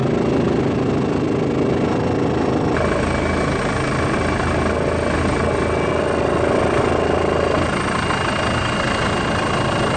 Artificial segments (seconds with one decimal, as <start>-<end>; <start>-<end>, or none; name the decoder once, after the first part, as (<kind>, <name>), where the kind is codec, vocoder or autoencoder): none